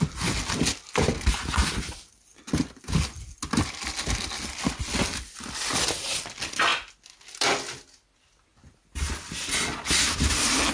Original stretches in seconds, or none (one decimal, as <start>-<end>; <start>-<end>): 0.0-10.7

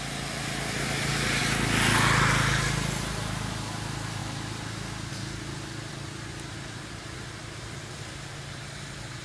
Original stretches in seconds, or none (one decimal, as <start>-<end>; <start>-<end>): 0.0-9.2

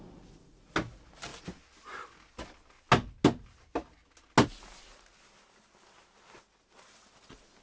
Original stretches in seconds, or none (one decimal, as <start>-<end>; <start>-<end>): 0.0-7.6